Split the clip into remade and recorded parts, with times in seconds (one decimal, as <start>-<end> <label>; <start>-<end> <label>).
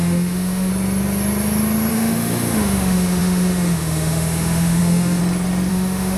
0.0-0.7 remade; 0.7-1.9 recorded; 1.9-5.2 remade; 5.2-5.7 recorded; 5.7-6.2 remade